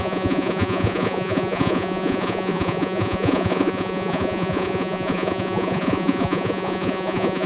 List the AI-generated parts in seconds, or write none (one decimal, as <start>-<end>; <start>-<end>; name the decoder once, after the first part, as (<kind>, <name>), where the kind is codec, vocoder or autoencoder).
0.0-7.5 (vocoder, Vocos)